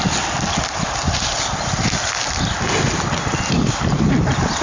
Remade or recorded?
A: recorded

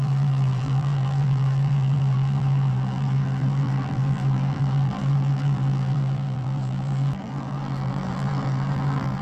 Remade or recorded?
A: remade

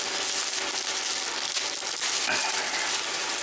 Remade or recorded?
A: recorded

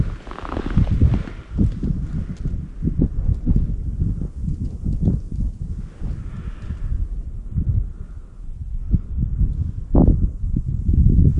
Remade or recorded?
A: recorded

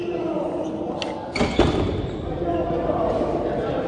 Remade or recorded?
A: recorded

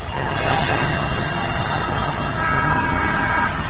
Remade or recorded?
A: remade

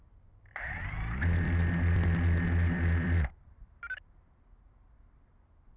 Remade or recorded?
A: remade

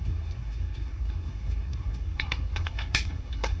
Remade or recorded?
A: remade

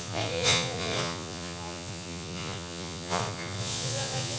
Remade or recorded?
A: remade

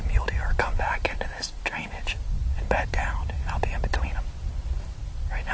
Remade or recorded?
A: recorded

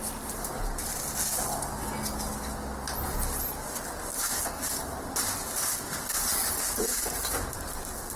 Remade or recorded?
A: recorded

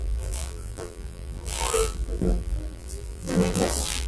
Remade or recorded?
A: remade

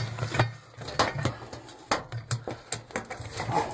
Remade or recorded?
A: recorded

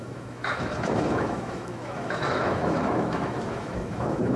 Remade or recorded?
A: remade